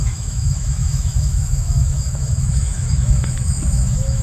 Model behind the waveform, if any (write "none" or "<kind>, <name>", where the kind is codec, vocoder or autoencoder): autoencoder, DAC-VAE